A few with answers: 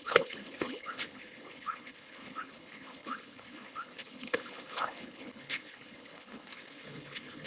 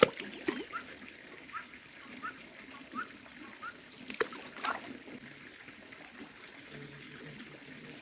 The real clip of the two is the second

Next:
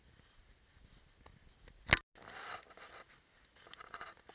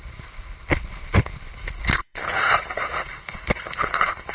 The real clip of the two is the first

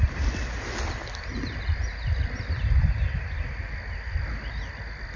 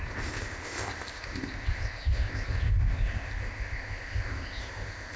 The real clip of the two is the first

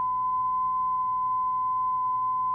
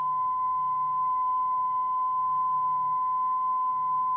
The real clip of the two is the first